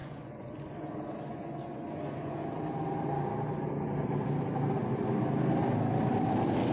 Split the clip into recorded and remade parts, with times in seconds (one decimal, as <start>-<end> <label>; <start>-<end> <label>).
0.0-2.4 remade; 2.4-6.7 recorded